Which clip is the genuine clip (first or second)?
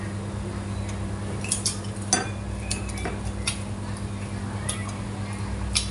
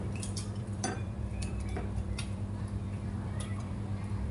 first